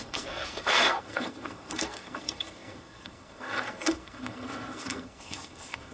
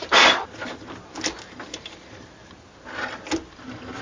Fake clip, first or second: first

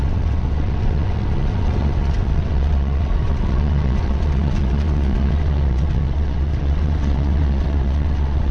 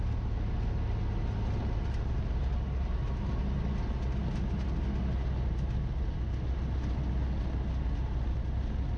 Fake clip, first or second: first